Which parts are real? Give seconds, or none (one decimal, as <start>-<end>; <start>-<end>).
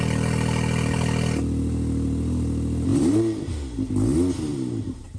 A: 0.0-2.9; 3.5-4.5